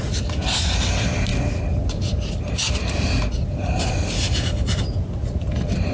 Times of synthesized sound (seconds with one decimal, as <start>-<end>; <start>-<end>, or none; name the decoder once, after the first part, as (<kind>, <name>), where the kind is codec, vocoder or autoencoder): none